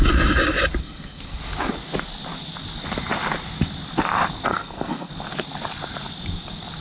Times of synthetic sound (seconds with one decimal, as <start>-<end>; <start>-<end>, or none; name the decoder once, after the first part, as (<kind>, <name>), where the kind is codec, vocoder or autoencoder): 0.8-1.4 (codec, SNAC); 4.5-5.1